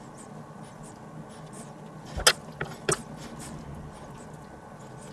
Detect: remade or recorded recorded